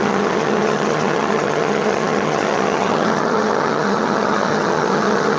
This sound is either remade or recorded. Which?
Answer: remade